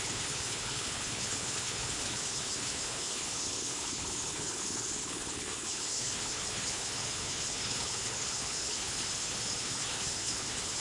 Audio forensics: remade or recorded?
remade